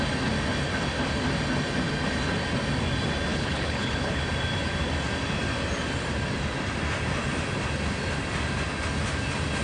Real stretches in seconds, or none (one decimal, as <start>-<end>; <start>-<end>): 0.0-3.3; 4.2-9.6